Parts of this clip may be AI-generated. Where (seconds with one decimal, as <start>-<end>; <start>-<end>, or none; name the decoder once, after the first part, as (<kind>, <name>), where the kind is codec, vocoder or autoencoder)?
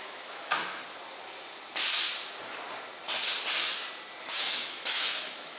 0.0-0.8 (autoencoder, DAC-VAE); 4.2-5.6